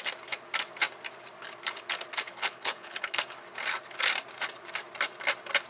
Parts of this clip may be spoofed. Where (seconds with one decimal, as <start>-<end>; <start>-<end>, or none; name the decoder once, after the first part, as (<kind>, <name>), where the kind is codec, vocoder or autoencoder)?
2.3-3.2 (codec, HILCodec)